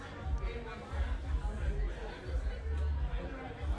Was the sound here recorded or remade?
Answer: recorded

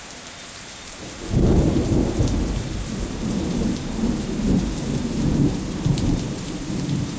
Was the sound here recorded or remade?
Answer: remade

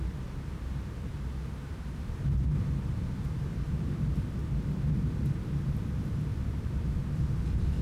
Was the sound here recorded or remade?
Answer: remade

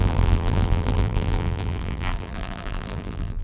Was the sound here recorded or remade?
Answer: remade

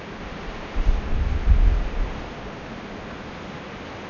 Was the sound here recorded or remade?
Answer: recorded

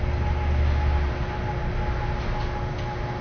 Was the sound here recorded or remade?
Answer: recorded